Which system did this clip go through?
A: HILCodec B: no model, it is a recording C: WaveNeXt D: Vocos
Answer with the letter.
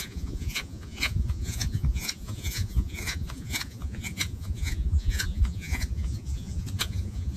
D